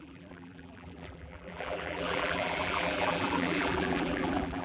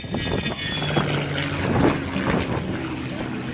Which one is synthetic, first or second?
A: first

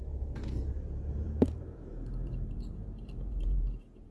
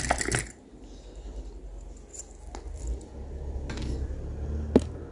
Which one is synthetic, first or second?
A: first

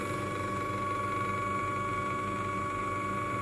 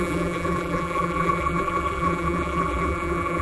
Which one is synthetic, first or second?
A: second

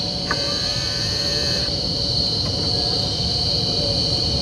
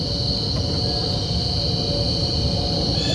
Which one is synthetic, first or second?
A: first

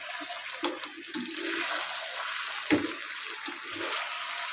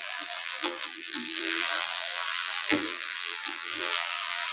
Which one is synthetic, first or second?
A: second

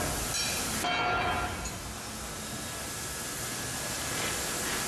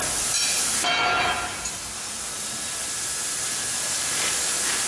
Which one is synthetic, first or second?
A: second